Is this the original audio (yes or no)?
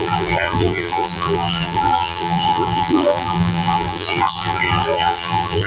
no